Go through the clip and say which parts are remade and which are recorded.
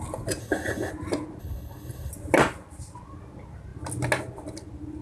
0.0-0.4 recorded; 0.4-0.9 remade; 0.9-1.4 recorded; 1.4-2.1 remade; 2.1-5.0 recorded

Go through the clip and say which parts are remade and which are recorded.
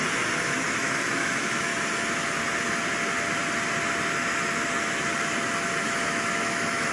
0.0-0.8 recorded; 0.8-1.7 remade; 1.7-5.8 recorded; 5.8-6.9 remade